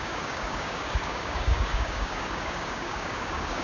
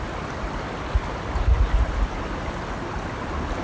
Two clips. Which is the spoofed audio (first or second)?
first